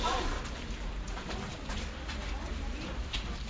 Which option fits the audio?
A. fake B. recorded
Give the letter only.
B